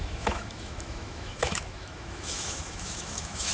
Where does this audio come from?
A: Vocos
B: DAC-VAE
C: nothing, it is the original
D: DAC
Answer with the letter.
B